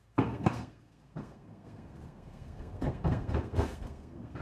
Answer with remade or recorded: remade